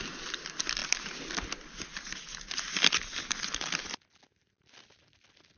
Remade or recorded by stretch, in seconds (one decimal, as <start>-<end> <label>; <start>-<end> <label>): 0.0-5.6 recorded